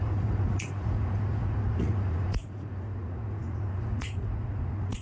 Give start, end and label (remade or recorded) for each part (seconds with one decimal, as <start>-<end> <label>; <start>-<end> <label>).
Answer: 0.0-5.0 remade